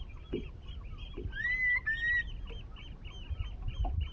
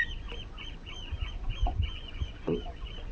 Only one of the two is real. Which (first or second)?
first